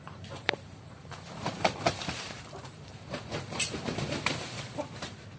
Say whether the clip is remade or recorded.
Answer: remade